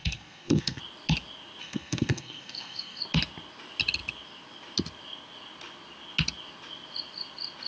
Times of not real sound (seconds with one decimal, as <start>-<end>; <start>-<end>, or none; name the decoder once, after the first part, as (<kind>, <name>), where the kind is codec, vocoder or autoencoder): 0.0-0.8 (codec, SNAC); 1.6-3.0